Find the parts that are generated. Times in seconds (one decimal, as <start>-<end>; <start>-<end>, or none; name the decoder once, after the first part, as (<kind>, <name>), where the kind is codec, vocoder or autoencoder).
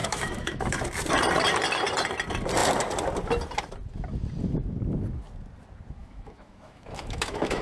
0.0-0.8 (autoencoder, DAC-VAE); 6.0-7.6